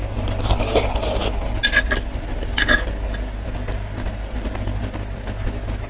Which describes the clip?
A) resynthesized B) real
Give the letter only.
B